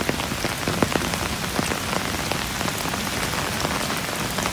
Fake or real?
real